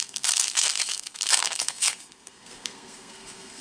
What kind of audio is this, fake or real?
fake